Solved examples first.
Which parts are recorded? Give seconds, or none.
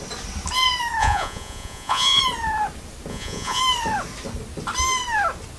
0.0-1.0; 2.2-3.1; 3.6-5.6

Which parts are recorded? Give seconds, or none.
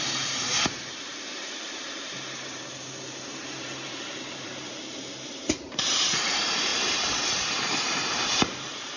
6.7-7.3